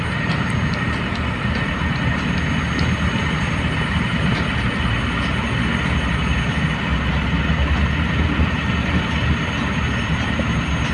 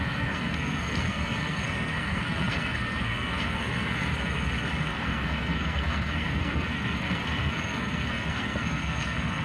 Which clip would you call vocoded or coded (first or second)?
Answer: second